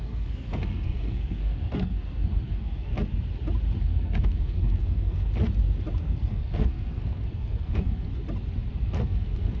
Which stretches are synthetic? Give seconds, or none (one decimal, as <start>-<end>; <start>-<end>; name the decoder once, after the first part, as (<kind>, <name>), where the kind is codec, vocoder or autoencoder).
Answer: 0.0-2.9 (codec, SNAC); 3.8-5.3; 6.0-8.1; 8.7-9.6